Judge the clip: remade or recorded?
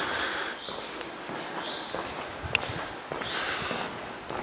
recorded